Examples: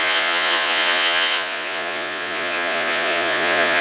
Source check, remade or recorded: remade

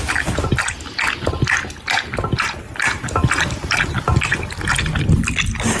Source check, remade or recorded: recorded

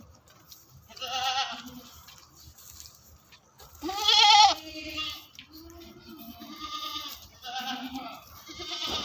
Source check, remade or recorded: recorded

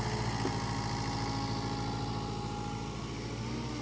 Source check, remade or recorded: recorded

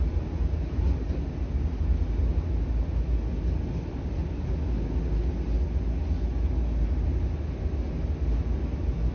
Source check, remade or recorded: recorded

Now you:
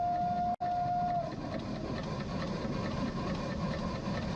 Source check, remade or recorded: recorded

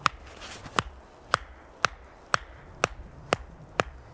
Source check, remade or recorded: recorded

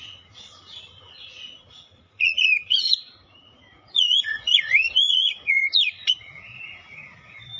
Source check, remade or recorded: remade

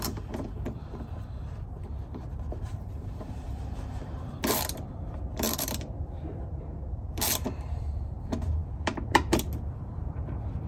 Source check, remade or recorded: remade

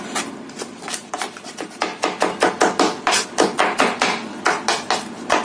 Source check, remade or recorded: recorded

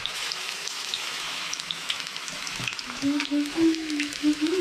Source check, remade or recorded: remade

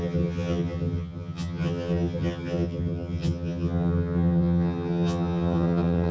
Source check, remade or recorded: remade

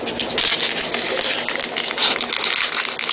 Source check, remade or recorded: recorded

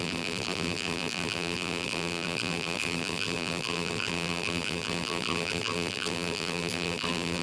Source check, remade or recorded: remade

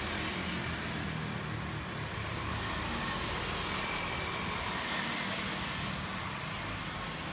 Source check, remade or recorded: recorded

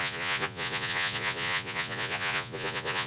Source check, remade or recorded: remade